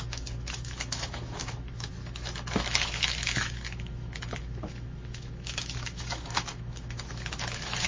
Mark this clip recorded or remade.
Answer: remade